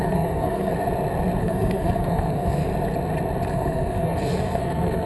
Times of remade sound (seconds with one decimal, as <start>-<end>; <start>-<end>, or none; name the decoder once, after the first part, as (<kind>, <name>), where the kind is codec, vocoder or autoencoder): 0.0-0.7 (codec, SNAC); 1.4-2.6; 3.5-5.1